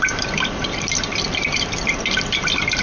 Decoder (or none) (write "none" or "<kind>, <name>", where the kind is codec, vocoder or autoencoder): none